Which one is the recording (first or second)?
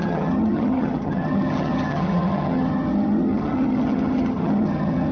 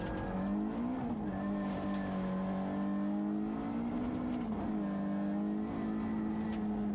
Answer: second